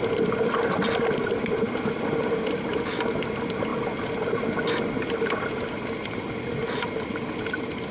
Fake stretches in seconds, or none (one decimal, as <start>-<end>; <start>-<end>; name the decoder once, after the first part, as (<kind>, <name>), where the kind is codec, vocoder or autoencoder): none